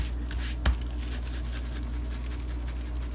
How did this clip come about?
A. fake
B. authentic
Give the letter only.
B